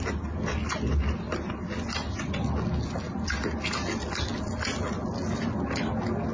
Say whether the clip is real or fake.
real